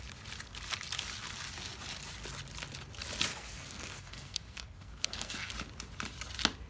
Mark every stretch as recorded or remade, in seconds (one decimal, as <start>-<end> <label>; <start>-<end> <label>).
0.0-3.3 recorded; 3.3-5.5 remade; 5.5-6.7 recorded

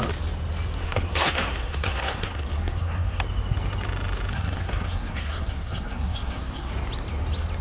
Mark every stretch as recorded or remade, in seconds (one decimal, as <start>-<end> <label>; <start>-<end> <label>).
0.0-0.8 recorded; 0.8-3.2 remade; 3.2-4.3 recorded; 4.3-6.7 remade; 6.7-7.6 recorded

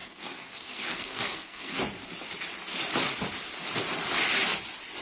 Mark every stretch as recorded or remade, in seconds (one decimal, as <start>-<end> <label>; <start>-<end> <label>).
0.0-1.8 remade; 1.8-5.0 recorded

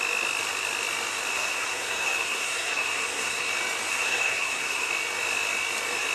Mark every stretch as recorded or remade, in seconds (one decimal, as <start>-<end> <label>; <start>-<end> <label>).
0.0-1.3 recorded; 1.3-3.5 remade; 3.5-3.9 recorded; 3.9-4.9 remade; 4.9-6.1 recorded